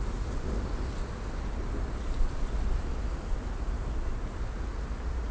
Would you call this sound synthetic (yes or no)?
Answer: no